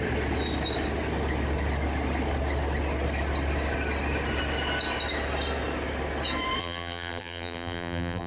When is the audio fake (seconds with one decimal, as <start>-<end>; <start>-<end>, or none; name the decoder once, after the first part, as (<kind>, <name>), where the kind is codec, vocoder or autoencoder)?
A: 6.6-8.3 (vocoder, BigVGAN v2)